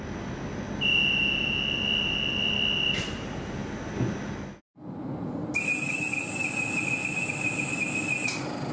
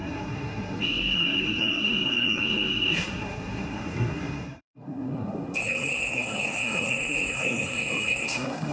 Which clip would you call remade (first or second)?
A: second